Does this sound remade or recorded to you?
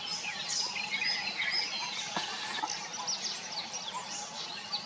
recorded